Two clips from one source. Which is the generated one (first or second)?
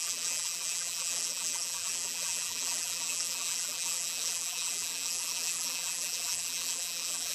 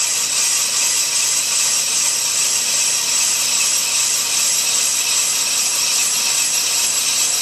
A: first